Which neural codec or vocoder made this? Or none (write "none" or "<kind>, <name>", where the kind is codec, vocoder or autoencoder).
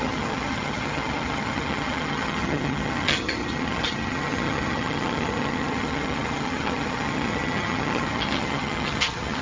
vocoder, HiFi-GAN